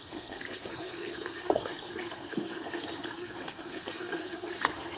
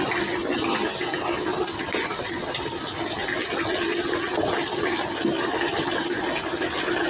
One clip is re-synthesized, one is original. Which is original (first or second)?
second